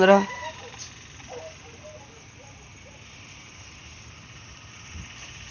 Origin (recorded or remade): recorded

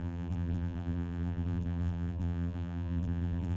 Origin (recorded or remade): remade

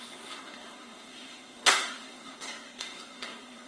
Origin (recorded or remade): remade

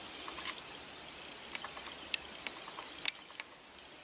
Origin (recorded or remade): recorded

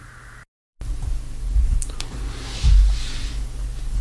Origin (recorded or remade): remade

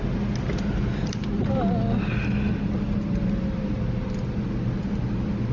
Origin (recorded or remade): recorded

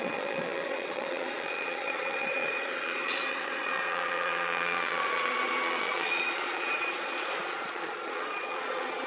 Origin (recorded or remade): remade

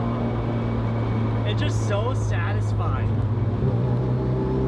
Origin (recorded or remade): recorded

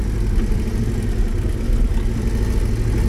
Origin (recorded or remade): recorded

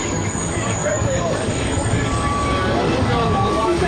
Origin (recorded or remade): remade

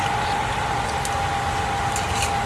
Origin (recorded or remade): recorded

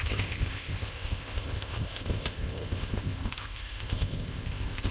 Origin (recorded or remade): remade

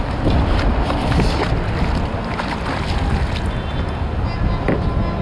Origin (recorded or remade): recorded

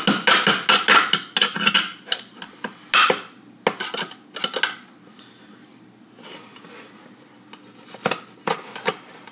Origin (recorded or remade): recorded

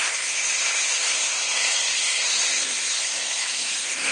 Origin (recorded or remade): remade